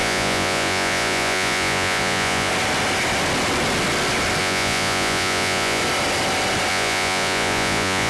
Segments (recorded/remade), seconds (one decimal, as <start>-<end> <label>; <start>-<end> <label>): 0.0-2.5 remade; 2.5-4.4 recorded; 4.4-5.8 remade; 5.8-6.7 recorded; 6.7-8.1 remade